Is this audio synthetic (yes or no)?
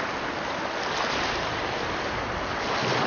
no